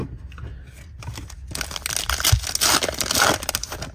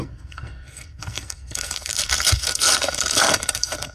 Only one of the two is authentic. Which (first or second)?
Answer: first